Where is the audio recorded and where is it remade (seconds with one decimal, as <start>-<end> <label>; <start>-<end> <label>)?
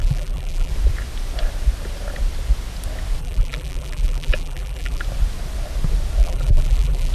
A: 0.0-0.7 remade; 0.7-3.2 recorded; 3.2-5.0 remade; 5.0-6.2 recorded; 6.2-7.1 remade